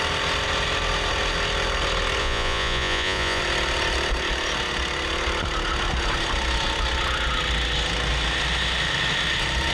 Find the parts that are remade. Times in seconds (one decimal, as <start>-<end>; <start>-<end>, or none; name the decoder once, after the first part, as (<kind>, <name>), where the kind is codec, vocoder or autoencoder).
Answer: 2.2-3.4 (vocoder, Vocos)